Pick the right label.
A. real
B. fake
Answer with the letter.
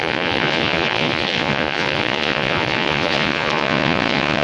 B